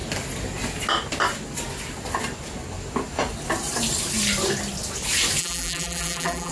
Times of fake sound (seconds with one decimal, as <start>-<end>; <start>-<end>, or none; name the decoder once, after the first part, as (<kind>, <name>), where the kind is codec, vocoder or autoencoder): 5.4-6.5 (vocoder, BigVGAN v2)